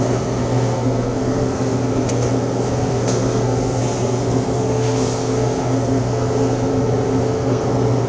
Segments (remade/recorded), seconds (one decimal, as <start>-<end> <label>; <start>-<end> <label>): 0.0-6.7 remade; 6.7-7.2 recorded; 7.2-8.1 remade